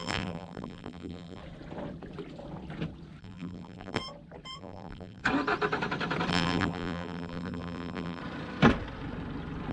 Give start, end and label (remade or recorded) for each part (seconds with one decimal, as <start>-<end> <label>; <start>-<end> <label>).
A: 0.0-1.4 remade; 1.4-3.2 recorded; 3.2-4.0 remade; 4.0-4.6 recorded; 4.6-5.2 remade; 5.2-6.3 recorded; 6.3-8.2 remade; 8.2-9.7 recorded